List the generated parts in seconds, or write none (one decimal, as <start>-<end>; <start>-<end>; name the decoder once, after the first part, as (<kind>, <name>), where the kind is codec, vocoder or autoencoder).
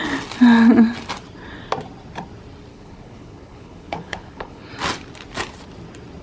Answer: 2.7-4.7 (codec, HILCodec)